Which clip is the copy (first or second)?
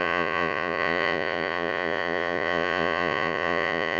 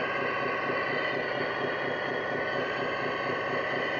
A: first